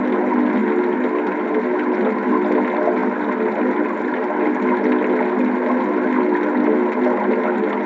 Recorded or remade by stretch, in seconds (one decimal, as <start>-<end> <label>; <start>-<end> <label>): 0.0-7.9 recorded